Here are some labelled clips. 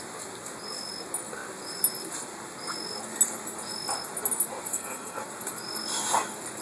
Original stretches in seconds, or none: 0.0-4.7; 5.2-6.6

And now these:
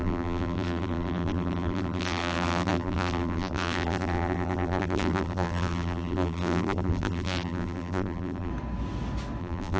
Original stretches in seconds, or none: 8.5-9.4

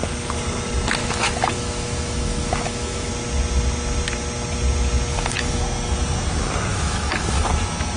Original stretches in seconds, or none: 0.0-1.0; 3.1-5.1; 5.6-6.7; 7.5-8.0